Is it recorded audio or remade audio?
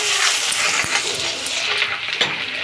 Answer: recorded